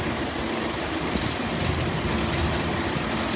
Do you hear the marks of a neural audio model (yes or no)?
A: no